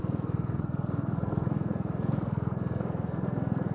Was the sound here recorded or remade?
remade